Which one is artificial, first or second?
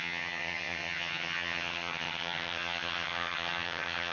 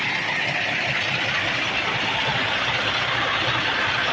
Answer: first